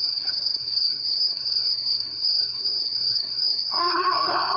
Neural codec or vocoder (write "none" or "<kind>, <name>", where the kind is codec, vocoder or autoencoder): codec, SNAC